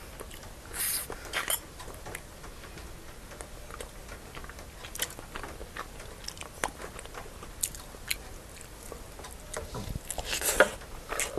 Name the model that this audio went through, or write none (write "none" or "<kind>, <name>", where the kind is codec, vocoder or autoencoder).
none